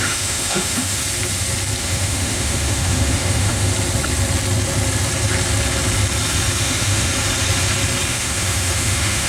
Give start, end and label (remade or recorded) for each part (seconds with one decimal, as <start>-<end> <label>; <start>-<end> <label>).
0.0-1.0 remade; 1.0-1.8 recorded; 1.8-3.7 remade; 3.7-6.6 recorded; 6.6-7.1 remade; 7.1-8.1 recorded; 8.1-9.3 remade